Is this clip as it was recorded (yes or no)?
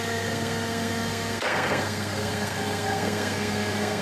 no